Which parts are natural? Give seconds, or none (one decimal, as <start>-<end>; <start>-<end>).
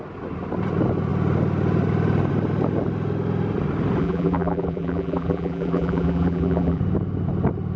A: 0.0-4.0; 6.8-7.8